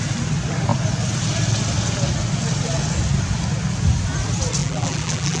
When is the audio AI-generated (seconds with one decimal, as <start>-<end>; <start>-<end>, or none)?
4.6-5.4